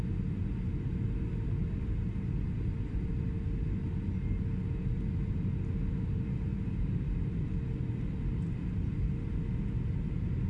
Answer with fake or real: real